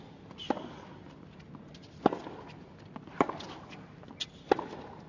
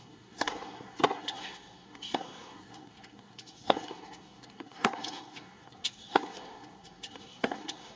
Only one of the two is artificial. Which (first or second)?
second